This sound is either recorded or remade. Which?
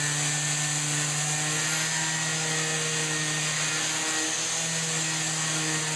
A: recorded